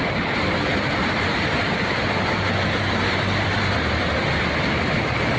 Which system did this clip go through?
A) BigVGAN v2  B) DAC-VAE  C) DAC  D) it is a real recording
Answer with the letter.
A